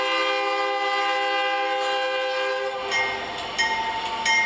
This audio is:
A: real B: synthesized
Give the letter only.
A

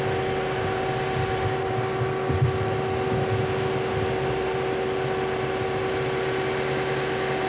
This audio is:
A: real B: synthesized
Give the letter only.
A